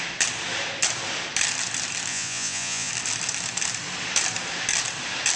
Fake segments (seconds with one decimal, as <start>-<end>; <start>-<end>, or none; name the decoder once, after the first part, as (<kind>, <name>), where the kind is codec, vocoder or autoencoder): 2.1-2.9 (vocoder, Vocos)